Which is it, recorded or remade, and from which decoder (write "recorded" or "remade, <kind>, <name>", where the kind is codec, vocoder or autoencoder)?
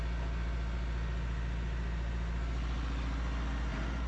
recorded